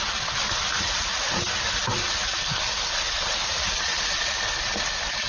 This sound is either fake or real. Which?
real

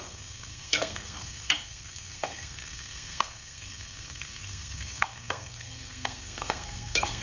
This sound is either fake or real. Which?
fake